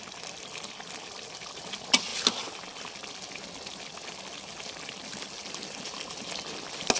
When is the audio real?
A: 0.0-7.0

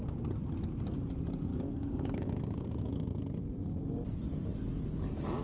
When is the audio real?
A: 0.0-1.5; 3.2-5.4